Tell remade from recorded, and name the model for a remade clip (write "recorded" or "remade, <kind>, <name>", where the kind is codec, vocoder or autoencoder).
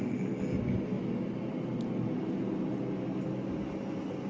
recorded